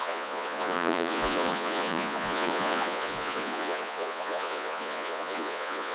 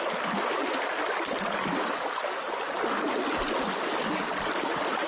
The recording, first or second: second